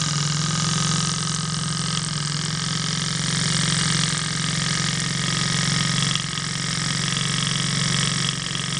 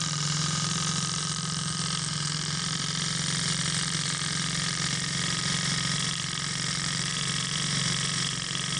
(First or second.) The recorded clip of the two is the first